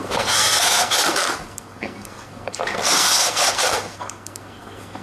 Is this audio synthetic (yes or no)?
yes